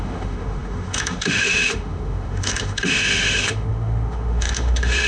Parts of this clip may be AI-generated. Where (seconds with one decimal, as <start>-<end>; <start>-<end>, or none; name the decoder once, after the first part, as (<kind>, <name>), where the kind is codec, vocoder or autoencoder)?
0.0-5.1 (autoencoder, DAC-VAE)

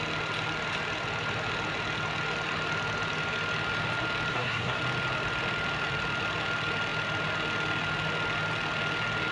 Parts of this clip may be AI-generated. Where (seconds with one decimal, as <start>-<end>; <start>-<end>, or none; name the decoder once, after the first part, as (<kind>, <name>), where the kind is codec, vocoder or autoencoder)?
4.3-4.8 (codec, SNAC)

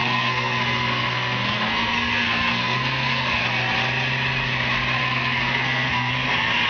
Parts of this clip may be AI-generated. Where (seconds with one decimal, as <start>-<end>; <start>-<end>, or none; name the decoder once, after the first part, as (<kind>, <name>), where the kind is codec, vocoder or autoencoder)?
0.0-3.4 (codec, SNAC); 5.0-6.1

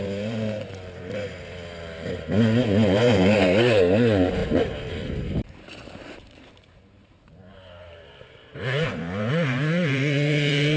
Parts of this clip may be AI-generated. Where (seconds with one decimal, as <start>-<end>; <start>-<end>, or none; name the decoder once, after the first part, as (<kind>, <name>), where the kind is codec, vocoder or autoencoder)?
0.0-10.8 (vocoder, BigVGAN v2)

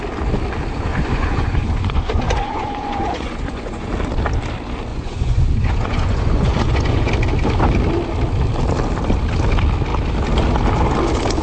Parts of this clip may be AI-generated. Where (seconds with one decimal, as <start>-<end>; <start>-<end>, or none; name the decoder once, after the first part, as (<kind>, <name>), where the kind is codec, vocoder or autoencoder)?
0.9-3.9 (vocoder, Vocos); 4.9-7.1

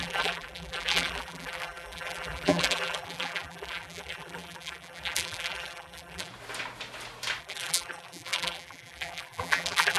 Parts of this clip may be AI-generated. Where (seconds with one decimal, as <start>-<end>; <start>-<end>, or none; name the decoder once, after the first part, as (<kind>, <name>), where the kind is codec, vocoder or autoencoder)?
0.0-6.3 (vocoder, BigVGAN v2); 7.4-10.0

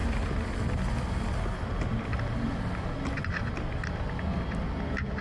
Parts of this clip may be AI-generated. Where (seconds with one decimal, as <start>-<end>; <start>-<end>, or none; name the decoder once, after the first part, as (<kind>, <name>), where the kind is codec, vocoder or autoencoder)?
none

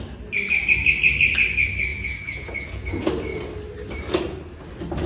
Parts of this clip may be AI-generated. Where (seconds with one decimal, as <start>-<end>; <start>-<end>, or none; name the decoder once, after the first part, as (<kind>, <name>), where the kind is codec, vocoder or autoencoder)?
1.9-2.9 (vocoder, Vocos)